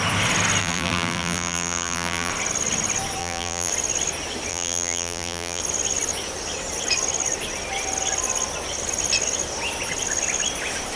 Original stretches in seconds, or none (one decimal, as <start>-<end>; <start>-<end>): 0.0-0.6; 2.3-3.2; 3.7-4.5; 5.6-11.0